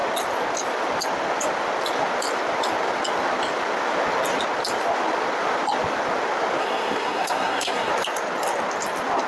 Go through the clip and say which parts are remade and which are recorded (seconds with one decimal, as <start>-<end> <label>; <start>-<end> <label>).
0.0-6.6 recorded; 6.6-7.9 remade; 7.9-9.3 recorded